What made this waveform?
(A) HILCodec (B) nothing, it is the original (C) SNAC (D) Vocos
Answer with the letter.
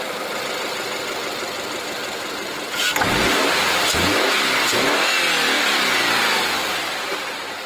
B